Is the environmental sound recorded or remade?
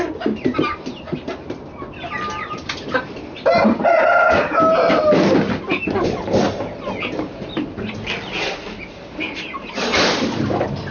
recorded